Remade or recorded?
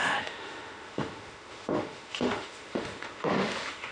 remade